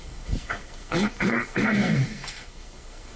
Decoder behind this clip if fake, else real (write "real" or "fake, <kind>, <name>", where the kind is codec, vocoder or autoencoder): fake, codec, SNAC